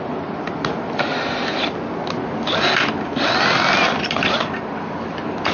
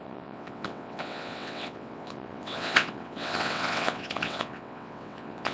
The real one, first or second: first